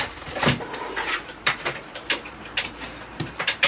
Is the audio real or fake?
fake